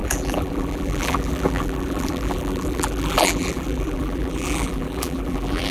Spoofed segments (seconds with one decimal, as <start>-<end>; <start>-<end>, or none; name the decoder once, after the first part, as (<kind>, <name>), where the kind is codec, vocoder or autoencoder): 0.0-5.7 (vocoder, BigVGAN v2)